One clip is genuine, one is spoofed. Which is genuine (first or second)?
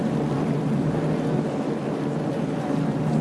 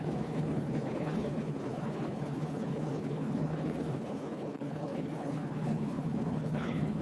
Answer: first